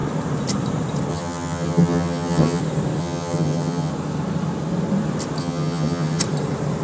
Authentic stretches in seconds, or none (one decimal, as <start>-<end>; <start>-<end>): 0.0-1.1; 2.6-3.0; 3.9-5.4; 6.2-6.8